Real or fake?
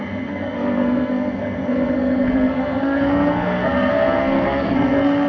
fake